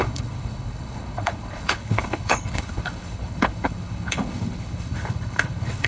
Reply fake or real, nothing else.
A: fake